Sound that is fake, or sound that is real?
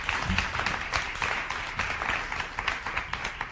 real